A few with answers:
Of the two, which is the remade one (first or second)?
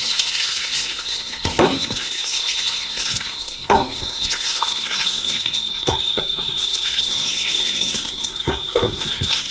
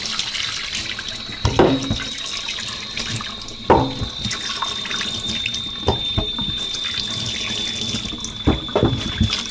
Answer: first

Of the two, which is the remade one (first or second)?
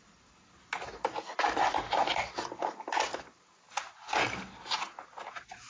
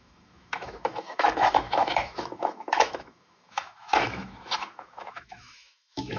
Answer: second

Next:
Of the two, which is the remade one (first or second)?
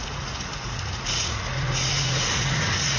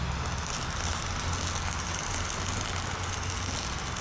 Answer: first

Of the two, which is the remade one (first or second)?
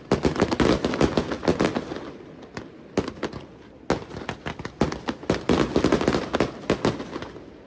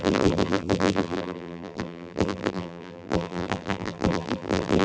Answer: second